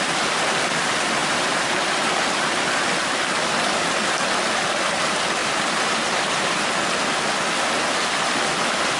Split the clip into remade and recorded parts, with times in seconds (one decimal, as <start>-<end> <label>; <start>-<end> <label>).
0.0-5.4 recorded; 5.4-6.7 remade; 6.7-9.0 recorded